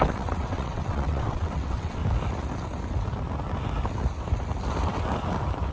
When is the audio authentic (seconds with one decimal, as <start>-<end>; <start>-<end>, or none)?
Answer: 2.0-5.7